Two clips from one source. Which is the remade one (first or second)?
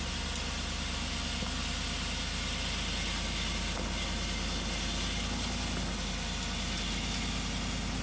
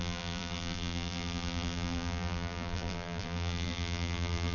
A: second